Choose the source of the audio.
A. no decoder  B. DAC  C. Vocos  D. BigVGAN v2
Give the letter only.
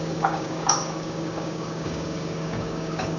B